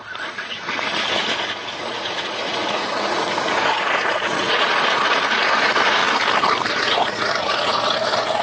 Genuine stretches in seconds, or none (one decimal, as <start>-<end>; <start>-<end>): 6.0-6.7